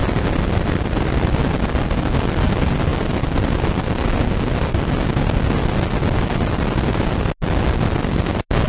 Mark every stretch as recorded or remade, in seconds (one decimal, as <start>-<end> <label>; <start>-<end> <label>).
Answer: 0.0-8.7 recorded